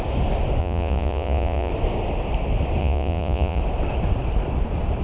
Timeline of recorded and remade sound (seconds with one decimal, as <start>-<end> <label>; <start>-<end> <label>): 0.0-0.6 recorded; 0.6-1.7 remade; 1.7-2.8 recorded; 2.8-3.6 remade; 3.6-5.0 recorded